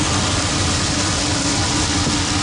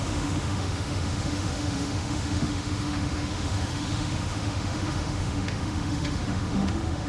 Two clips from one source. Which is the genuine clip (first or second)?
first